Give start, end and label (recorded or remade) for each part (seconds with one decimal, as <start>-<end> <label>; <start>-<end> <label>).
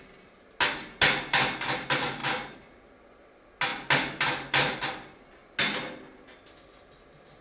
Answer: 0.0-7.4 recorded